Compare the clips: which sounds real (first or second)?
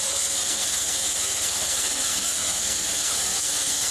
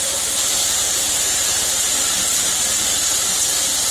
second